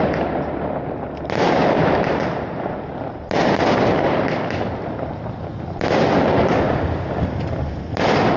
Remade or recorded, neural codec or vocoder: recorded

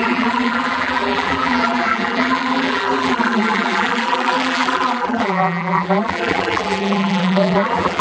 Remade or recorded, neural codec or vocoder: remade, vocoder, BigVGAN v2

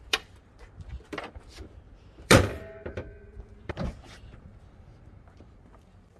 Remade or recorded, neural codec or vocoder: remade, vocoder, BigVGAN v2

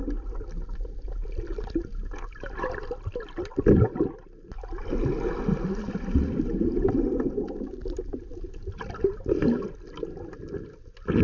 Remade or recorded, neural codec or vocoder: recorded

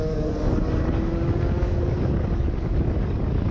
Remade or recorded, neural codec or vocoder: remade, codec, DAC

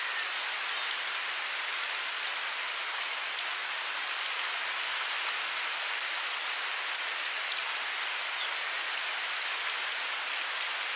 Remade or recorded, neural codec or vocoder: recorded